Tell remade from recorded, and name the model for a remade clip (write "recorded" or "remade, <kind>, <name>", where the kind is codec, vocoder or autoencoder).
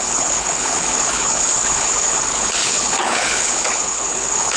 remade, codec, HILCodec